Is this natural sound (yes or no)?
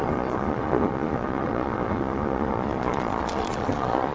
no